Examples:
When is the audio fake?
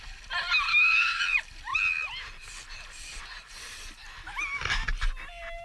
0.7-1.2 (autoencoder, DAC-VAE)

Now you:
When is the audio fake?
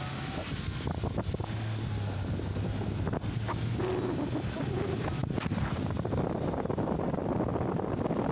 none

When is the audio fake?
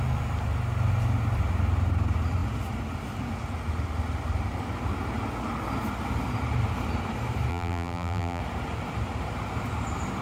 7.5-8.4 (vocoder, BigVGAN v2)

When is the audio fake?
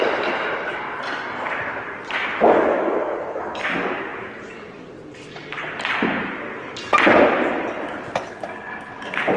2.7-3.6 (autoencoder, DAC-VAE)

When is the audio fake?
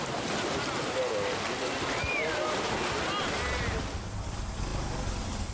none